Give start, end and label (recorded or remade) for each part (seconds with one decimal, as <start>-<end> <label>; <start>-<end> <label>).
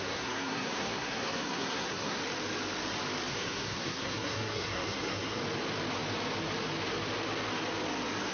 0.0-2.2 remade; 2.2-3.3 recorded; 3.3-5.4 remade; 5.4-8.3 recorded